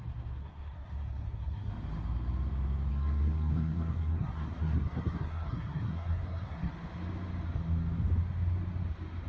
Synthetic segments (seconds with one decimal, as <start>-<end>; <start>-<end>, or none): 0.4-1.7; 2.9-6.7

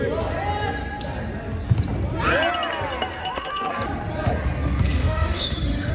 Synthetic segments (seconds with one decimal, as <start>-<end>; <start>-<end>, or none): 3.2-3.7; 5.0-5.9

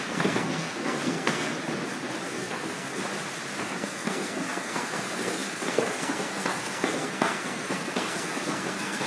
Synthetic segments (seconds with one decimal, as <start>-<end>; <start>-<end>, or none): 0.0-1.5; 2.2-2.9; 3.6-9.1

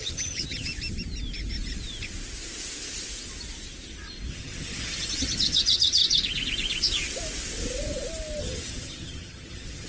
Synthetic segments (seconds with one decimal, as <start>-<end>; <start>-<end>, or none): 0.0-0.7; 4.3-6.0; 8.4-9.9

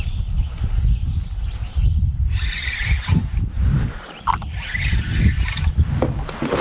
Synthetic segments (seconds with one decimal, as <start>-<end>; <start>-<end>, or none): 1.7-5.7

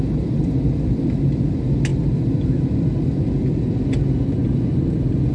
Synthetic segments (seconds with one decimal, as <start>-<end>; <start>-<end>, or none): none

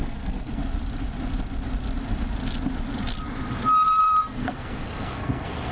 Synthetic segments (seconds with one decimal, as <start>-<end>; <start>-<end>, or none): 0.0-0.6; 4.0-5.7